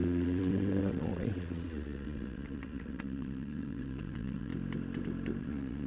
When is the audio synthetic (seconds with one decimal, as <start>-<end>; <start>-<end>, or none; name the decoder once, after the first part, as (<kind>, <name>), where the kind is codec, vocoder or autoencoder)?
0.0-4.5 (vocoder, WaveNeXt); 5.4-5.9